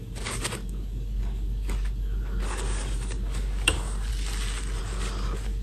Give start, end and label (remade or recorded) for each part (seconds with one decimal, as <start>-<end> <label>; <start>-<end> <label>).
0.0-4.1 remade; 4.1-4.8 recorded; 4.8-5.6 remade

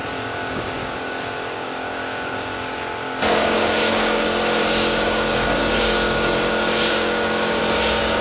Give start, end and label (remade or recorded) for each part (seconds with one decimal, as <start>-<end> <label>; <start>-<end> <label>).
0.0-8.2 remade

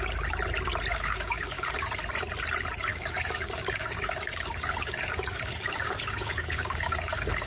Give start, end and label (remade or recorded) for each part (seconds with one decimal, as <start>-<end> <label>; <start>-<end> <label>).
0.0-0.9 recorded; 0.9-1.9 remade; 1.9-2.9 recorded; 2.9-7.5 remade